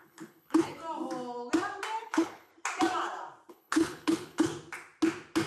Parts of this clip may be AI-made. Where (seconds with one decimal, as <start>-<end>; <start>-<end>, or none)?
0.0-0.8; 2.0-2.5; 3.5-4.5